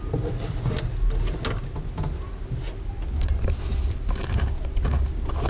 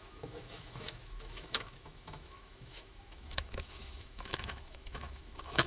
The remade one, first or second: second